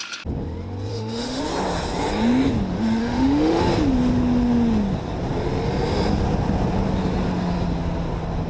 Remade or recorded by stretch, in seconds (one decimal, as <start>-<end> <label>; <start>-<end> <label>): 0.0-0.9 recorded; 0.9-1.4 remade; 1.4-3.0 recorded; 3.0-3.6 remade; 3.6-8.5 recorded